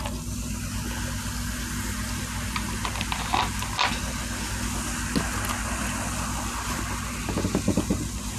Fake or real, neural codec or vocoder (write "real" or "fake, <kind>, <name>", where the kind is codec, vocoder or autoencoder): real